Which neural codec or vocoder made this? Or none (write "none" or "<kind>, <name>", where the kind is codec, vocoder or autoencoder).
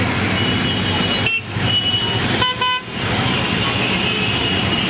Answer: none